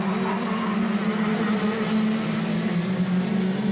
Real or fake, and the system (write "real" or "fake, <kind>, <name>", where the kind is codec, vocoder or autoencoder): real